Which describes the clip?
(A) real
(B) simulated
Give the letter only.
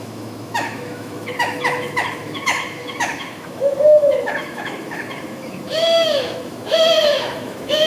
B